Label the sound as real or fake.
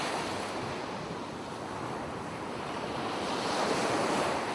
real